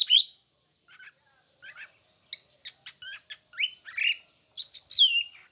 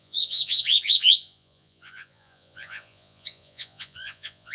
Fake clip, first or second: second